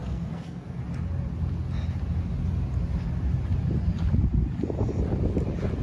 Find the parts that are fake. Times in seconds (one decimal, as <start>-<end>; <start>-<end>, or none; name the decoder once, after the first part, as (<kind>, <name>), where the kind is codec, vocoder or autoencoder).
0.0-0.8 (codec, SNAC)